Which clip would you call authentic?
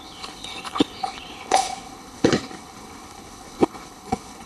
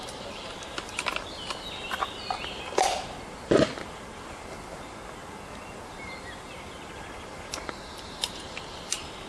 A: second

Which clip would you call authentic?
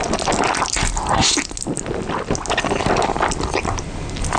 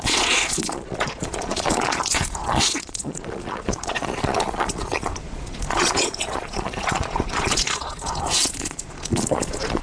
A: first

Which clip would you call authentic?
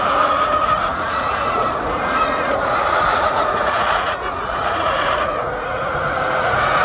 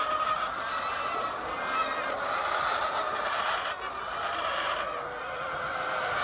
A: second